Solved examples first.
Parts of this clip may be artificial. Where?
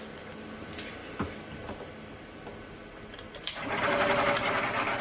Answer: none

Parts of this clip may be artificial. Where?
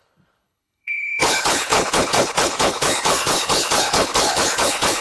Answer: 0.0-5.0 (codec, HILCodec)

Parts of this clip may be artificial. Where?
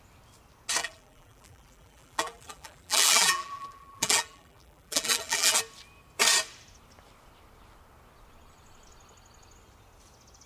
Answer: 0.8-5.6 (vocoder, BigVGAN v2)